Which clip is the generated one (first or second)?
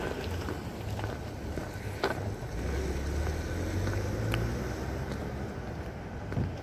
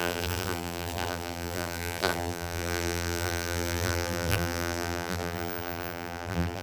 second